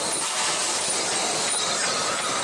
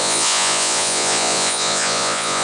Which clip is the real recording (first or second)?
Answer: first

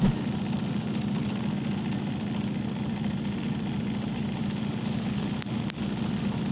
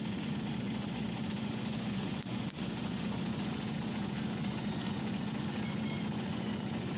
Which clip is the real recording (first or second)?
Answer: first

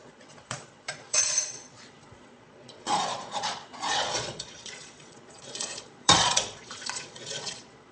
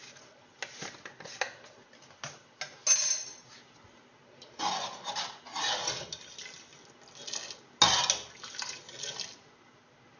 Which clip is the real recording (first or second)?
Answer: second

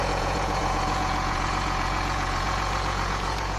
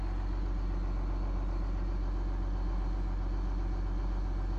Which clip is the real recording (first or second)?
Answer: second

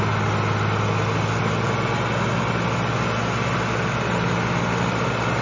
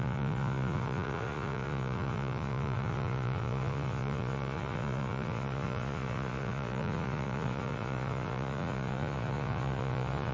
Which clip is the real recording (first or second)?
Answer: first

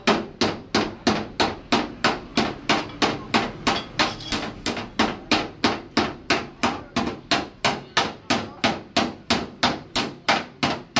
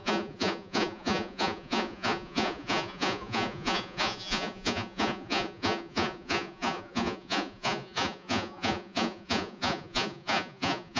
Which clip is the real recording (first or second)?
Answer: first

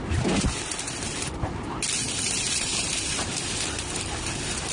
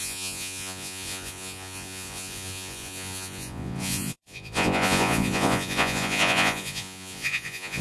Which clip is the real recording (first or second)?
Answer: first